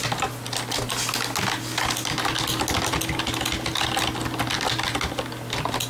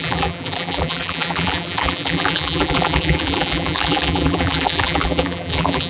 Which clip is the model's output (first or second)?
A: second